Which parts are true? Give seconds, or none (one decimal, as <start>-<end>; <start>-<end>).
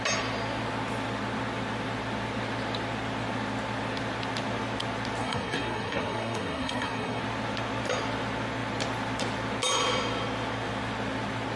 0.0-5.2; 7.2-11.6